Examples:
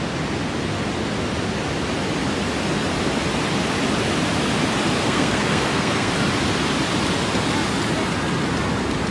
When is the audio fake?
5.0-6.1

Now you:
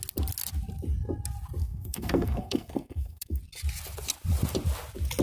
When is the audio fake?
1.6-3.4

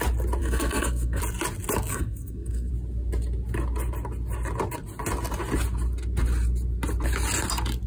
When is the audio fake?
0.4-1.2; 1.9-2.7

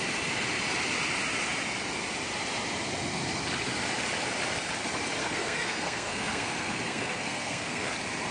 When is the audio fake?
5.2-7.9

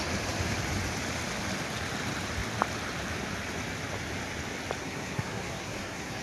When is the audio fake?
4.8-6.2